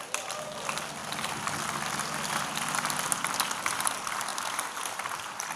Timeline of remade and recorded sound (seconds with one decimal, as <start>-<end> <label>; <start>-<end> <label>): 0.0-4.3 recorded; 4.3-4.8 remade; 4.8-5.6 recorded